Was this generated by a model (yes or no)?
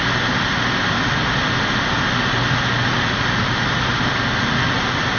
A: no